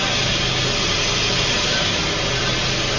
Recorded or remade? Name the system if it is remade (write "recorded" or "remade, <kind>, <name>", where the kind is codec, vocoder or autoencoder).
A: recorded